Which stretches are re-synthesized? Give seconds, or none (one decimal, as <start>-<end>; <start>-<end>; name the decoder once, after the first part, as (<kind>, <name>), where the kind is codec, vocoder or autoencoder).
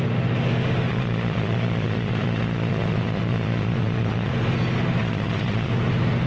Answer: 0.9-4.3 (vocoder, Vocos); 5.0-5.7